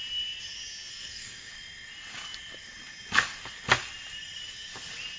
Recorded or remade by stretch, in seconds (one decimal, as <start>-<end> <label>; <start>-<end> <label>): 0.0-0.9 recorded; 0.9-1.5 remade; 1.5-5.2 recorded